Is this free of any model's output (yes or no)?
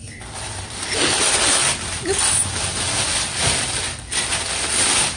yes